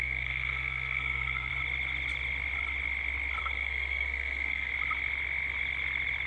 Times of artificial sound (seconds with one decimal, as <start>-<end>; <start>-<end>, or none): 0.0-1.5; 3.4-4.7